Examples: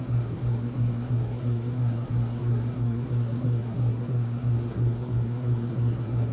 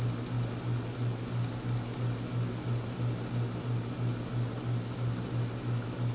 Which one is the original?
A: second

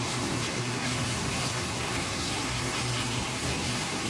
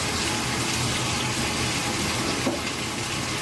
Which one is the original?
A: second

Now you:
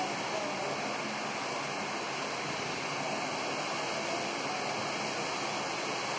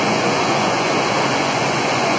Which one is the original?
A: first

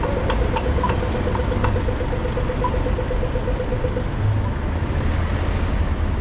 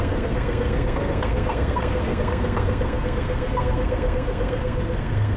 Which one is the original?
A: first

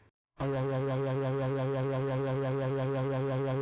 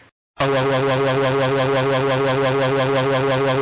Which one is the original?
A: second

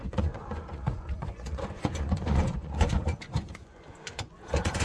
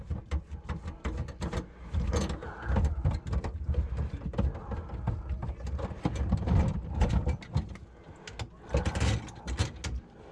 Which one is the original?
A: second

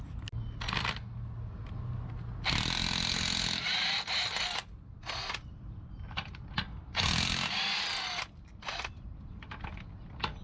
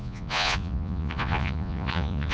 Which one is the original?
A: first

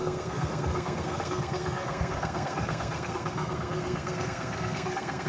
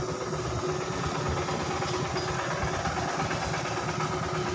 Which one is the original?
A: second